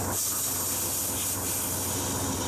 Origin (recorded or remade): recorded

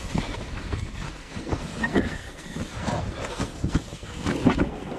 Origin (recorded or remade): remade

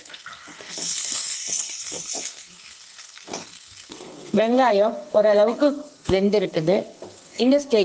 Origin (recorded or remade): remade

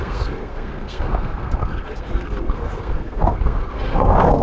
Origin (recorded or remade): remade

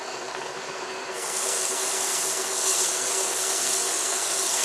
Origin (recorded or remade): remade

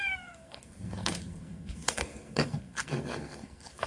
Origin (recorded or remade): remade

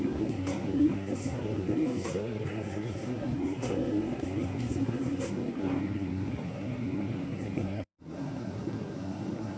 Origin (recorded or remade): remade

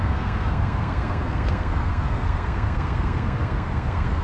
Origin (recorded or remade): remade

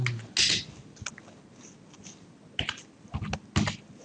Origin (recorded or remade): recorded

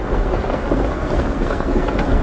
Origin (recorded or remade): remade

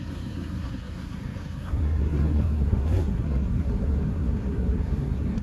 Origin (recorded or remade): remade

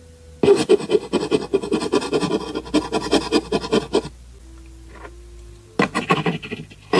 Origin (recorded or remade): recorded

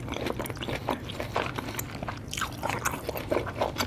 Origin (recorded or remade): recorded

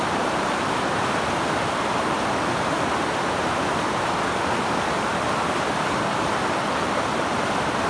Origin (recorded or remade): recorded